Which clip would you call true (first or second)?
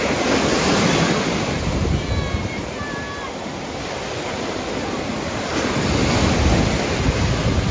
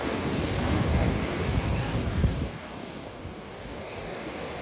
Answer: first